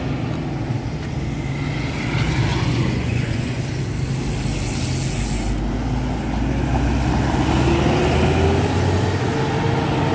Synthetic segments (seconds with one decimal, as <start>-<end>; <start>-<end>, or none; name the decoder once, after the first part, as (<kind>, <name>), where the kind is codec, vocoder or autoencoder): 2.5-3.6 (vocoder, Vocos)